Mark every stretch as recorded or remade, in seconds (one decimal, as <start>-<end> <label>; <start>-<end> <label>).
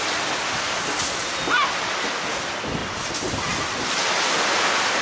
0.0-5.0 recorded